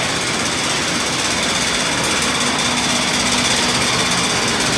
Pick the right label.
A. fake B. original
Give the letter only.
B